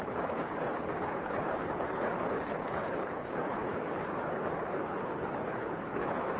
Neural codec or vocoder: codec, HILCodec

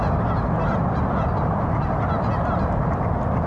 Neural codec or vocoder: none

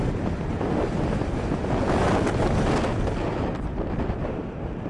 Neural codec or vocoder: none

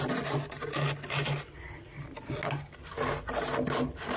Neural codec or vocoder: none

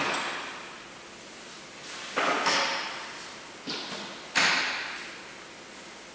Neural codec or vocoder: none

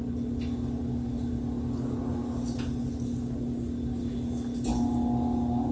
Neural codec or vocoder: none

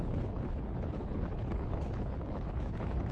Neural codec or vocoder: codec, HILCodec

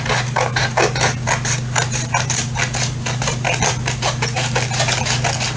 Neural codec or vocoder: none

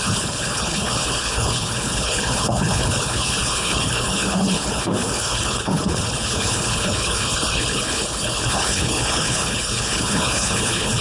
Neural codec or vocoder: codec, HILCodec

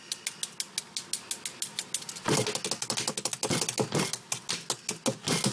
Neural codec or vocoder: none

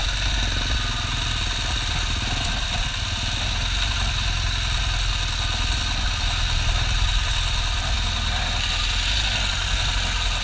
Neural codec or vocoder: none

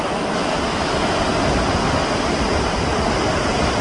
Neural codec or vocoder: none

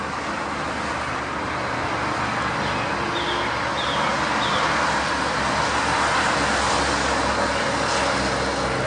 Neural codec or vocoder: none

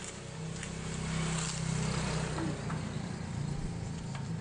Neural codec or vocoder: none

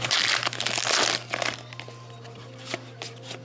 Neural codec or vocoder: none